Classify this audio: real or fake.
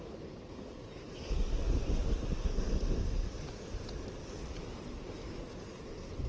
real